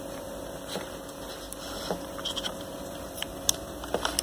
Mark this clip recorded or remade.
remade